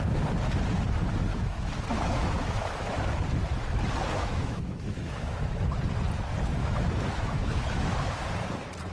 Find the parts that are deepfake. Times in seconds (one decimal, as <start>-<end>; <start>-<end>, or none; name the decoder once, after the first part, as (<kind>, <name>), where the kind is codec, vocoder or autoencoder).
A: 1.3-3.1 (autoencoder, DAC-VAE); 4.2-5.4; 6.6-8.3